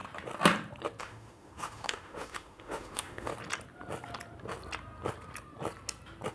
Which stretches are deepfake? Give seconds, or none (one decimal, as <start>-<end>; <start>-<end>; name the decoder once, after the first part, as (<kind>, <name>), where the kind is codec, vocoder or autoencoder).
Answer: 1.0-3.3 (autoencoder, DAC-VAE)